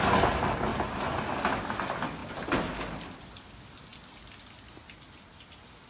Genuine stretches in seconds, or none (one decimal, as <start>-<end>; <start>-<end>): 0.0-0.7; 1.2-2.2; 3.0-5.9